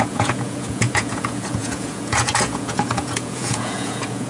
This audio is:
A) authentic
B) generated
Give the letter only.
B